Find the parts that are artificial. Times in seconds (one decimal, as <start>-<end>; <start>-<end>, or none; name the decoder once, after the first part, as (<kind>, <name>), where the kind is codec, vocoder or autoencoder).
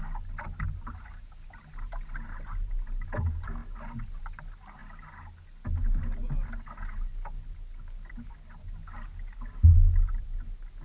none